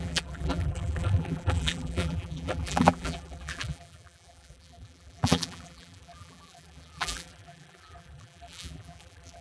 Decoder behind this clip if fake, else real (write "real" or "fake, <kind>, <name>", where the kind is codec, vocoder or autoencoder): fake, vocoder, BigVGAN v2